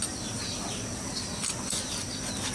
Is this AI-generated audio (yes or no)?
yes